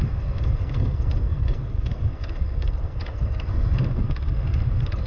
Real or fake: fake